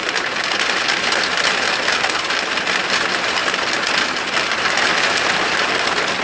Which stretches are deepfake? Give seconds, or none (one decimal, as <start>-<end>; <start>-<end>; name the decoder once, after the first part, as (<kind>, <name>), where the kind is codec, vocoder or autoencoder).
none